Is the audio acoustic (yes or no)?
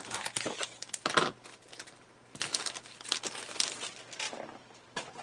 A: yes